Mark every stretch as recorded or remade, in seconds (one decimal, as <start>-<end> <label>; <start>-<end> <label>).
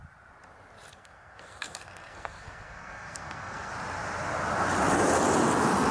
0.0-0.9 recorded; 0.9-3.7 remade; 3.7-5.9 recorded